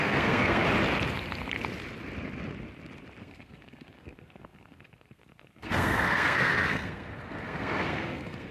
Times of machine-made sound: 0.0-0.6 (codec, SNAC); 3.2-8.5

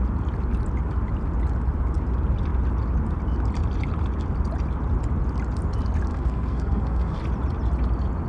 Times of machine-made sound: 6.1-7.2 (codec, SNAC)

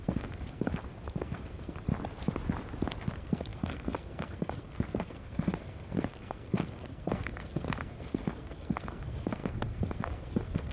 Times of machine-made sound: 0.0-0.7 (codec, SNAC); 1.2-1.9; 3.1-10.7